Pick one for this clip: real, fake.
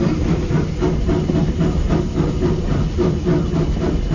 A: real